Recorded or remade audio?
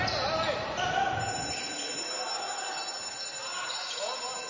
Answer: recorded